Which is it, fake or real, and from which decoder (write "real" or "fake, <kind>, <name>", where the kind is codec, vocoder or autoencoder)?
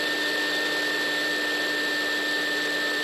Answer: real